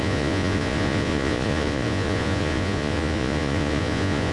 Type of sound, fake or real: fake